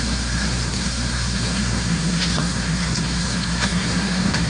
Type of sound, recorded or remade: remade